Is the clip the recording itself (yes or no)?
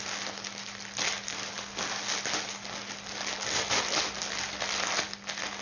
yes